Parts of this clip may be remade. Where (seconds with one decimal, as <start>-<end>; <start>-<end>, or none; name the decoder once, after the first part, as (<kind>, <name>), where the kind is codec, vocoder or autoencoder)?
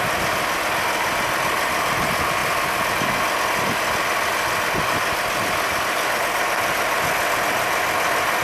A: none